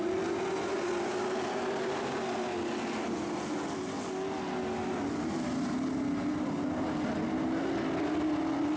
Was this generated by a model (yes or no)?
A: no